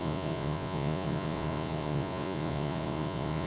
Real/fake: fake